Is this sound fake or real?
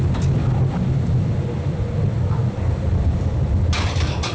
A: real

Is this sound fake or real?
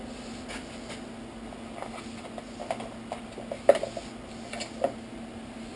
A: real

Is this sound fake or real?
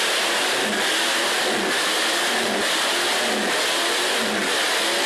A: real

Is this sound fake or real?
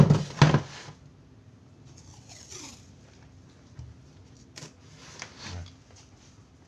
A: real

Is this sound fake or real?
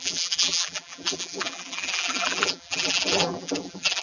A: fake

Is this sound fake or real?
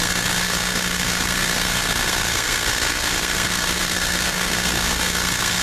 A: fake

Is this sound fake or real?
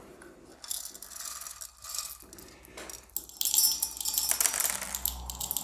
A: real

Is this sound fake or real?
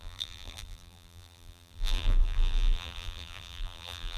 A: fake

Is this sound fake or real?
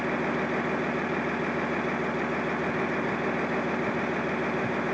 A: real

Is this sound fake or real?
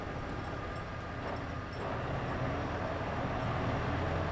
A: real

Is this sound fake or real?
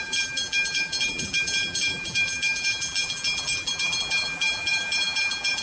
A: fake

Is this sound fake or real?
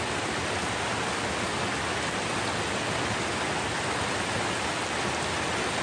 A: real